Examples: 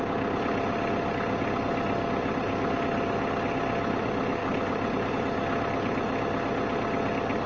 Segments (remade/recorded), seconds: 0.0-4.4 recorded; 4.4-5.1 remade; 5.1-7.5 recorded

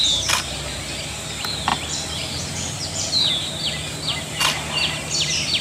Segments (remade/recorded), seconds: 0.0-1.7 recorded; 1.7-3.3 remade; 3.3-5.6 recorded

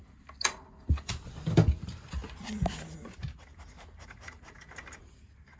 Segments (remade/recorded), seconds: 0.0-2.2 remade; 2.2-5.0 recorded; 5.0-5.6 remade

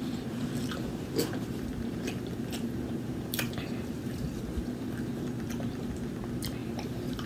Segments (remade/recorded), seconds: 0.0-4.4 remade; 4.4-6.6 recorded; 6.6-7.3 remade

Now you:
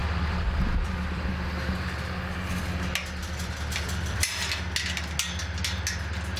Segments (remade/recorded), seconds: 0.0-1.3 remade; 1.3-3.2 recorded; 3.2-4.4 remade; 4.4-6.4 recorded

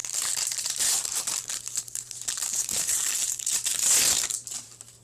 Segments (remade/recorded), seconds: 0.0-3.7 remade; 3.7-4.6 recorded; 4.6-5.0 remade

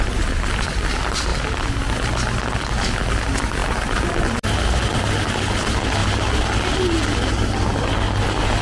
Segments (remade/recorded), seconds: 0.0-3.6 recorded; 3.6-4.2 remade; 4.2-8.6 recorded